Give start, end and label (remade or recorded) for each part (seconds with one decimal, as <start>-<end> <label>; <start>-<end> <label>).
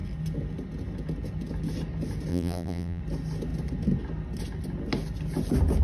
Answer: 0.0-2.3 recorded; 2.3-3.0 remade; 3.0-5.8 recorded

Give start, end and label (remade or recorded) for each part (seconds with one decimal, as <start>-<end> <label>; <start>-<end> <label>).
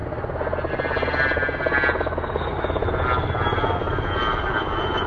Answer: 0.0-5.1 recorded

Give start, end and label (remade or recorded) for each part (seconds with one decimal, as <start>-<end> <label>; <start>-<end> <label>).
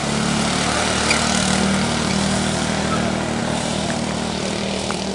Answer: 0.0-3.4 recorded; 3.4-5.1 remade